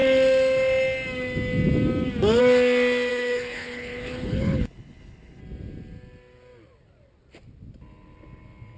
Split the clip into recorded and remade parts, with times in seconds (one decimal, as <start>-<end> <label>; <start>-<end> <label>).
0.0-3.1 recorded; 3.1-5.4 remade; 5.4-8.8 recorded